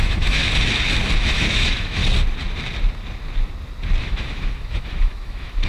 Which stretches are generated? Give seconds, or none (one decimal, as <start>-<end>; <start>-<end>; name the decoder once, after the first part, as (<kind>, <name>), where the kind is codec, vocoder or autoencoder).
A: 0.0-0.4 (autoencoder, DAC-VAE); 1.2-2.0; 4.0-5.7